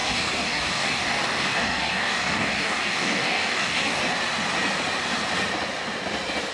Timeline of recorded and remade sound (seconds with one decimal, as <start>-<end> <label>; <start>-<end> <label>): 0.0-4.0 remade; 4.0-6.5 recorded

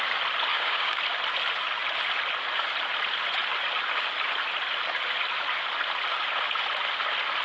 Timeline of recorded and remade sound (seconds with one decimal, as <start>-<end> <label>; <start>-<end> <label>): 0.0-0.5 recorded; 0.5-1.0 remade; 1.0-7.4 recorded

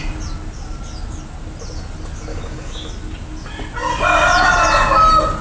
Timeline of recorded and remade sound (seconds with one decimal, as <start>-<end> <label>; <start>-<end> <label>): 0.0-2.3 recorded; 2.3-2.9 remade; 2.9-5.4 recorded

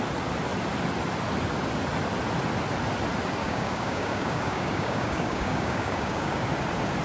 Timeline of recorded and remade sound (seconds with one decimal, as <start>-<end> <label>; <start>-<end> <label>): 0.0-3.4 recorded; 3.4-6.5 remade; 6.5-7.0 recorded

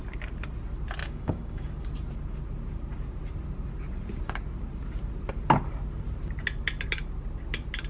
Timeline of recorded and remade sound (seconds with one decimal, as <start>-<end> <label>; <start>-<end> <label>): 0.0-1.0 recorded; 1.0-1.7 remade; 1.7-7.9 recorded

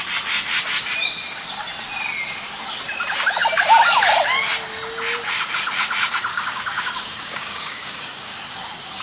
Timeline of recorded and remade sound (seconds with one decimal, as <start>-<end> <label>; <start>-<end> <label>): 0.0-6.3 recorded; 6.3-8.4 remade; 8.4-9.0 recorded